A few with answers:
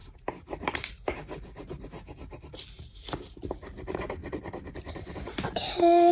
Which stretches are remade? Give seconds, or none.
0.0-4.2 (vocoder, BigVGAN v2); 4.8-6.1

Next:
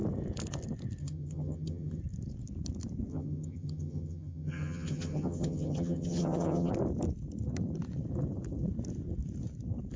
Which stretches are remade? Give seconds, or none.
1.0-2.0 (vocoder, HiFi-GAN); 3.1-6.7

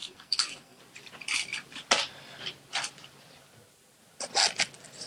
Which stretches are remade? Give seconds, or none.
0.0-0.8 (codec, SNAC)

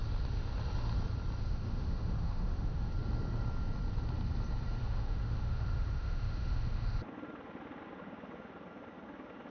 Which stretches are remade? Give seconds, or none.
1.4-2.9 (autoencoder, DAC-VAE); 4.8-7.0

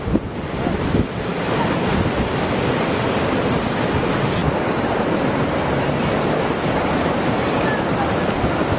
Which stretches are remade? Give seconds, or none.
4.4-8.2 (vocoder, BigVGAN v2)